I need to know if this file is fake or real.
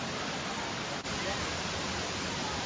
real